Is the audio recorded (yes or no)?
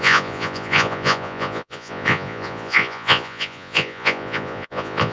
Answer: no